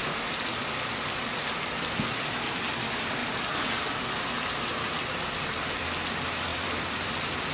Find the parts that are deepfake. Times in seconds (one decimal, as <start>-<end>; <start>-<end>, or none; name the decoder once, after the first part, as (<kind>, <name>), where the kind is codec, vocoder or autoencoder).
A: 6.5-7.1 (vocoder, BigVGAN v2)